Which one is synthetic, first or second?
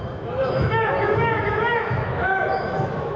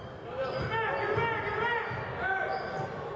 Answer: first